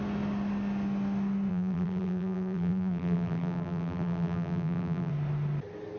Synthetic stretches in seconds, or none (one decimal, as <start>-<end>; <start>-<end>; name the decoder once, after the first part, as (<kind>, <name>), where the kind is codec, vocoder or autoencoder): 1.5-5.1 (vocoder, BigVGAN v2)

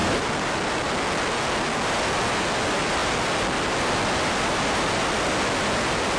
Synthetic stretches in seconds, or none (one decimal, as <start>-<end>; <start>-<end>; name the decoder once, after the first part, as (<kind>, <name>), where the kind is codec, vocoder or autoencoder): 0.0-0.9 (vocoder, BigVGAN v2)